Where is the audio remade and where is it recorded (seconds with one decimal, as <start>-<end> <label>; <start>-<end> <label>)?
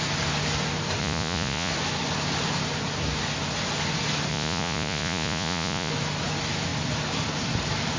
0.0-1.0 recorded; 1.0-1.7 remade; 1.7-4.3 recorded; 4.3-5.9 remade; 5.9-8.0 recorded